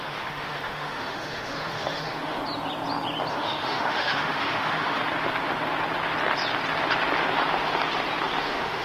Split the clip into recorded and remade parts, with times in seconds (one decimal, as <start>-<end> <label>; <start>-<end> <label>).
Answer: 0.0-2.4 remade; 2.4-3.3 recorded; 3.3-5.0 remade; 5.0-8.4 recorded; 8.4-8.8 remade